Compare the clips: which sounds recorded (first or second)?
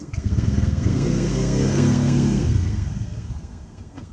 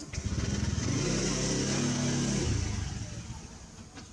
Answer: second